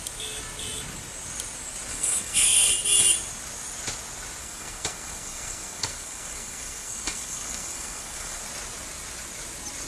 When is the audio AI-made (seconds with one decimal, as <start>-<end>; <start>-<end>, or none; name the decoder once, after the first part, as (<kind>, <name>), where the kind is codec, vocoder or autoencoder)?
1.9-2.7 (codec, SNAC); 4.4-8.4